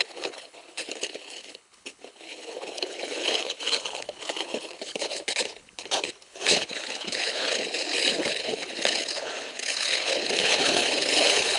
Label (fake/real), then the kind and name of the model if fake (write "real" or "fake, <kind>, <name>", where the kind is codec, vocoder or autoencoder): fake, codec, HILCodec